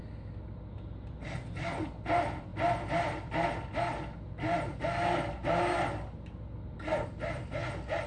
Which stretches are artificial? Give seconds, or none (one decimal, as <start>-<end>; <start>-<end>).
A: none